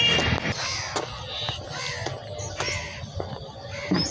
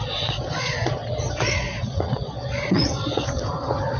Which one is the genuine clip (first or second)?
first